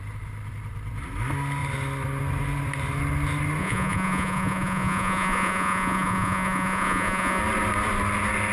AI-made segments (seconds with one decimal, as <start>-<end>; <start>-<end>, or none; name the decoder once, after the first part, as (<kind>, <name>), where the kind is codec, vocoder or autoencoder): 3.6-7.4 (vocoder, Vocos)